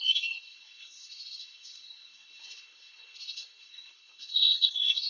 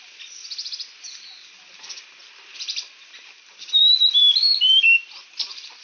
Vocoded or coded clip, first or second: first